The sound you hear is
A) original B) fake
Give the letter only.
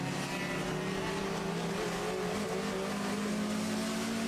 A